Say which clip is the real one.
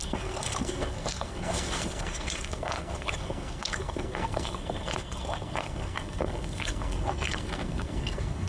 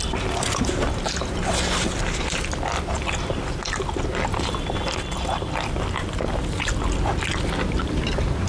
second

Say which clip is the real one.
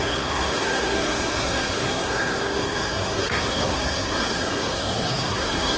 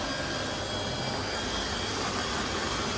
second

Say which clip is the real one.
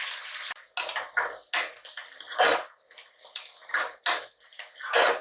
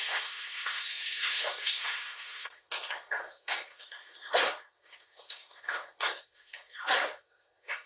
first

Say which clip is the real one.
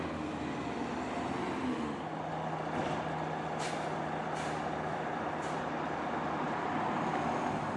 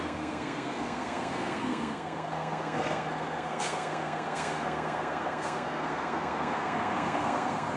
first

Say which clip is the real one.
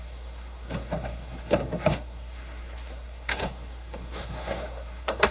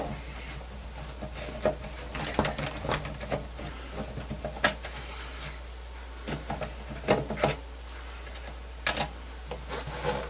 second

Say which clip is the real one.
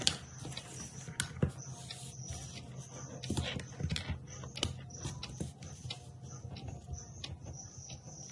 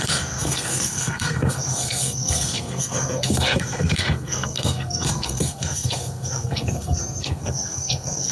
first